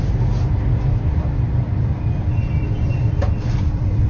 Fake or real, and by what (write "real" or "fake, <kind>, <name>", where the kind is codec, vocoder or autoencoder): fake, vocoder, BigVGAN v2